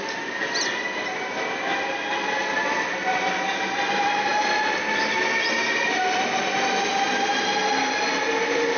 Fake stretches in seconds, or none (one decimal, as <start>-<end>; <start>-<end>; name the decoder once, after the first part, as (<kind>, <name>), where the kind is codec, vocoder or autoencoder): none